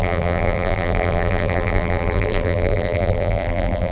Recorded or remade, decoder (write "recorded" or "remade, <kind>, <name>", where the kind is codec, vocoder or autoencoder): remade, vocoder, BigVGAN v2